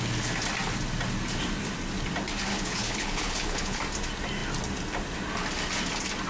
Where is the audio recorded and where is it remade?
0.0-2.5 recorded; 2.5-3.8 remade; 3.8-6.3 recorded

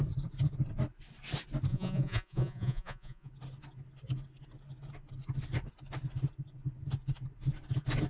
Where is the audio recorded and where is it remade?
0.0-1.7 recorded; 1.7-3.3 remade; 3.3-8.1 recorded

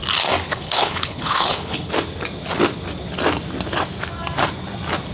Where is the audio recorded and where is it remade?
0.0-0.5 recorded; 0.5-1.9 remade; 1.9-5.1 recorded

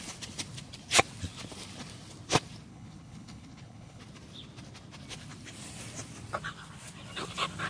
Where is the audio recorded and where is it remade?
0.0-2.7 recorded; 2.7-4.0 remade; 4.0-7.7 recorded

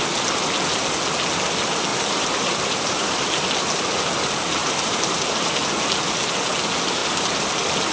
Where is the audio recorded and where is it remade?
0.0-1.9 recorded; 1.9-3.2 remade; 3.2-4.6 recorded; 4.6-5.5 remade; 5.5-7.0 recorded; 7.0-7.5 remade; 7.5-7.9 recorded